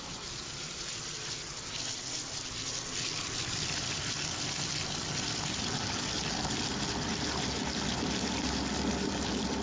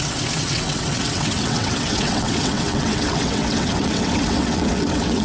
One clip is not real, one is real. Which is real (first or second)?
first